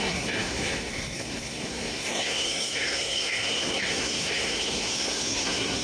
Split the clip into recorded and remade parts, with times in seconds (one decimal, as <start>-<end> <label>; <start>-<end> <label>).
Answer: 0.0-5.8 remade